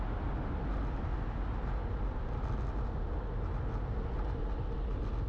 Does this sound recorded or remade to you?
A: recorded